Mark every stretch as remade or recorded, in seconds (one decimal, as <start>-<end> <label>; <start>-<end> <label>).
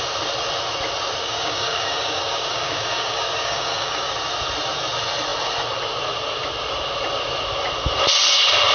0.0-1.2 recorded; 1.2-4.1 remade; 4.1-8.7 recorded